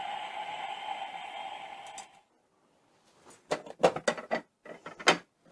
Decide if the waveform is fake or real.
real